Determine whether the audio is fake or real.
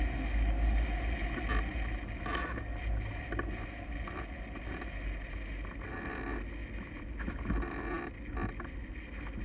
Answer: real